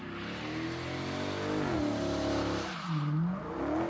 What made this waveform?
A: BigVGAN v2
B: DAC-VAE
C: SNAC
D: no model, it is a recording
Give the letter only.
D